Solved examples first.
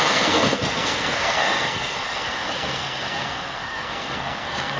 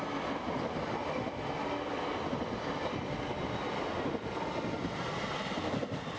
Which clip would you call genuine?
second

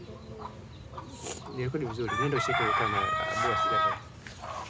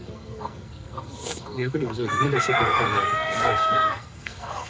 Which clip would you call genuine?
first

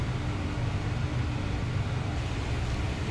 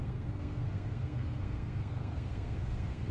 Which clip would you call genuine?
first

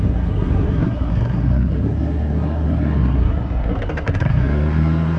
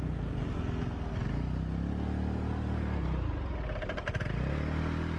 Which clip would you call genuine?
second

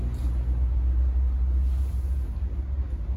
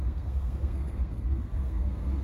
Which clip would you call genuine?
first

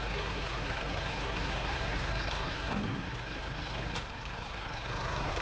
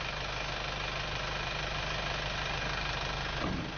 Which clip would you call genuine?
second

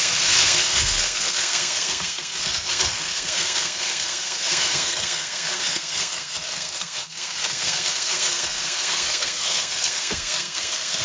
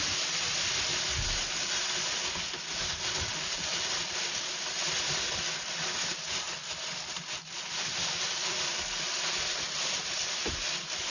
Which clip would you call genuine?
second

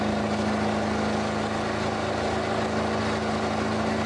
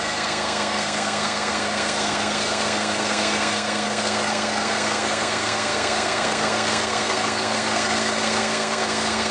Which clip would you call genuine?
first